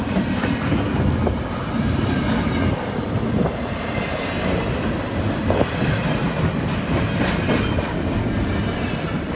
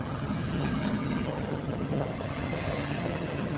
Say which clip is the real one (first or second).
first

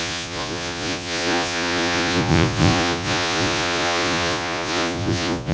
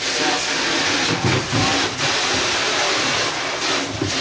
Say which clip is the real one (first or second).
second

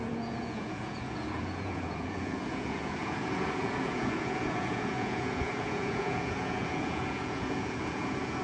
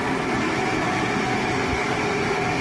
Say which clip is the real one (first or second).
second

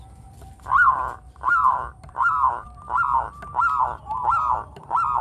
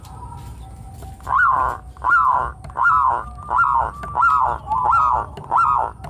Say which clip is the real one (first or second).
second